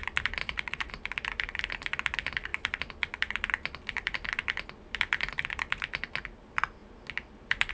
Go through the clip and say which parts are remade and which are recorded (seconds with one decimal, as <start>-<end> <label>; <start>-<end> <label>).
0.0-0.4 recorded; 0.4-0.9 remade; 0.9-7.7 recorded